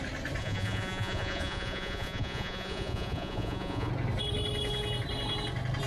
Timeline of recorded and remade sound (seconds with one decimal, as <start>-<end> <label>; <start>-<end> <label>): 0.0-0.4 recorded; 0.4-3.9 remade; 3.9-5.9 recorded